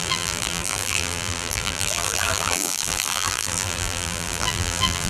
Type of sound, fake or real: fake